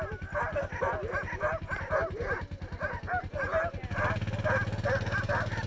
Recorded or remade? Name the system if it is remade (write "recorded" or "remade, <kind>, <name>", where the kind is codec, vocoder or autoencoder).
recorded